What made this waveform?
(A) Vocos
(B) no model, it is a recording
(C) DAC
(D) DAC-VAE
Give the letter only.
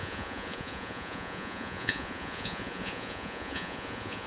A